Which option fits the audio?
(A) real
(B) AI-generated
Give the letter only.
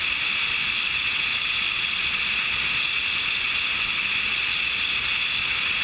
A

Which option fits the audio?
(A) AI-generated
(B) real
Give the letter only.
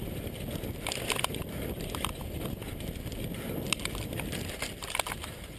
B